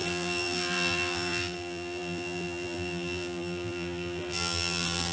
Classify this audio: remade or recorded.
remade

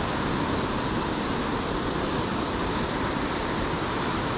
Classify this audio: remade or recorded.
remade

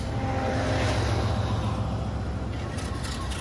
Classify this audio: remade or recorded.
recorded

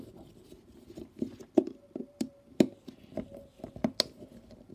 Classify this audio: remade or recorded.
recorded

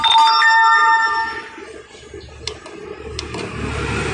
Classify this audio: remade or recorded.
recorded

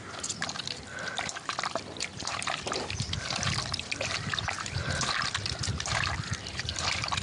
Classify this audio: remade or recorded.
remade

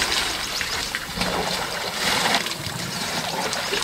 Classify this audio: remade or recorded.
remade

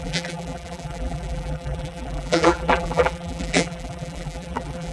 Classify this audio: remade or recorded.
remade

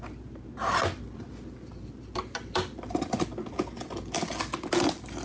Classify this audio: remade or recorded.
recorded